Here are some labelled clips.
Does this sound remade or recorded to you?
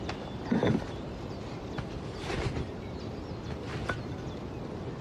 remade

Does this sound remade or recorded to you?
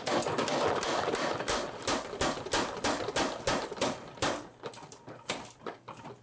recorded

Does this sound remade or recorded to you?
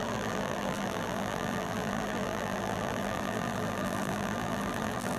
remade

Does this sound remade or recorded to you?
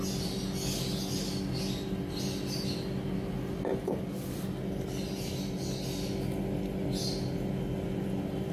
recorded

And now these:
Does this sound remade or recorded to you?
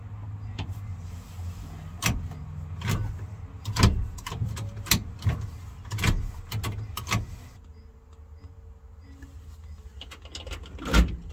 recorded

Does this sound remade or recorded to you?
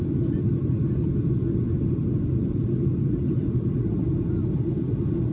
remade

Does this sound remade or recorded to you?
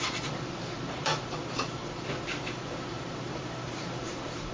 remade